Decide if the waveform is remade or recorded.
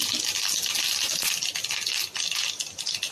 recorded